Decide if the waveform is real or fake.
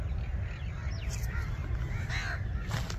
real